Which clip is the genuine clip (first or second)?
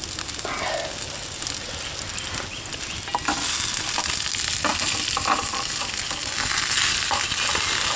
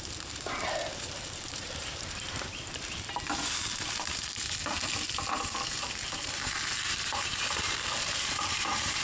first